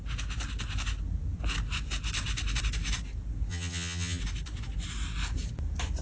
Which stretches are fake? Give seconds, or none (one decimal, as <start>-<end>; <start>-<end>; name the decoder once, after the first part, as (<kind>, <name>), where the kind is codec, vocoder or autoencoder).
3.5-4.2 (vocoder, HiFi-GAN)

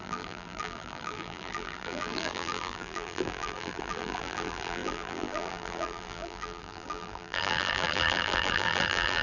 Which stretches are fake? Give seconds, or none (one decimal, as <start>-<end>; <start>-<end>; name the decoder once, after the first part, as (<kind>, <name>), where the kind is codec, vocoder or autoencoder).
0.0-9.2 (vocoder, BigVGAN v2)

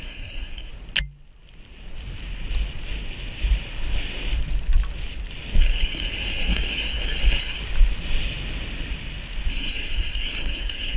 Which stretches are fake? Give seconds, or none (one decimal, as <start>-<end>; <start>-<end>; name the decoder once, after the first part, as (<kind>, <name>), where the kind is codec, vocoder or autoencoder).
0.0-0.7 (codec, SNAC); 5.6-7.6; 9.5-11.0

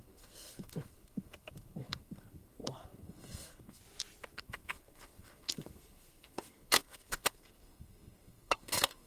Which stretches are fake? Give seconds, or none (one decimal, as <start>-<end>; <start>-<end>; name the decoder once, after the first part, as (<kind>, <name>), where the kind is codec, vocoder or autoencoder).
0.0-3.8 (codec, SNAC); 4.3-9.1